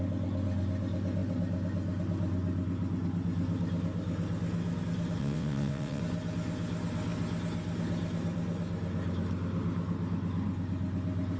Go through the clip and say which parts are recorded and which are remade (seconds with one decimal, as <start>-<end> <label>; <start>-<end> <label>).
0.0-5.2 recorded; 5.2-6.0 remade; 6.0-11.4 recorded